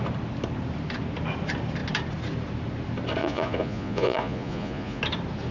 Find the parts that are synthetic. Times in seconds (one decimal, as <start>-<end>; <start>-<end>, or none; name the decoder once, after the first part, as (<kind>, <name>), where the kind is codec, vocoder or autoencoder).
3.2-5.0 (vocoder, Vocos)